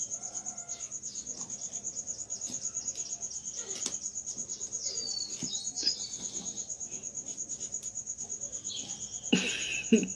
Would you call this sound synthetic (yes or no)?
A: no